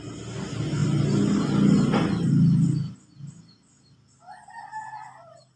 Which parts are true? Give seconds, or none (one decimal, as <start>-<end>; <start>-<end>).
0.0-5.6